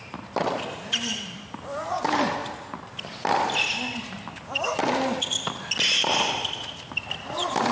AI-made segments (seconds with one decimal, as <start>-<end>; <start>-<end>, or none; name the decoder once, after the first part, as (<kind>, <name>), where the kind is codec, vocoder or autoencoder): none